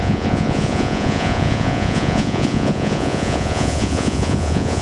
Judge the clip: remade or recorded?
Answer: remade